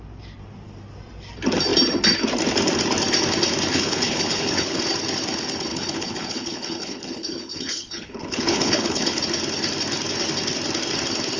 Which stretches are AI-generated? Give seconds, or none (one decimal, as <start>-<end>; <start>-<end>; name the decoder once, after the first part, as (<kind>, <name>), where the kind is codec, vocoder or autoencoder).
3.7-4.8 (codec, HILCodec); 5.7-9.2